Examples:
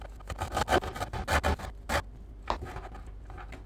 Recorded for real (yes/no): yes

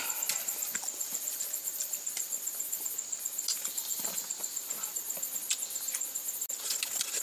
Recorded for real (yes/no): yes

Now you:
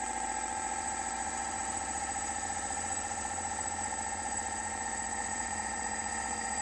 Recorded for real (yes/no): no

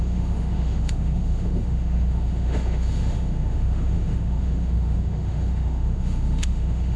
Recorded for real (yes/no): no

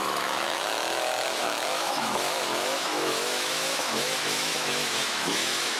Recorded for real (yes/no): no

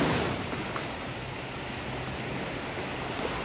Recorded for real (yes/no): yes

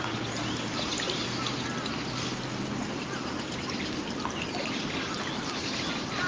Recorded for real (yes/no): yes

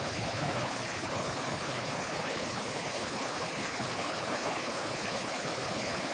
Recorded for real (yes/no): no